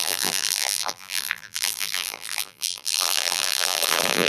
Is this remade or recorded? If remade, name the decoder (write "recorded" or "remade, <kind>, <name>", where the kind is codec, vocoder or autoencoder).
remade, vocoder, BigVGAN v2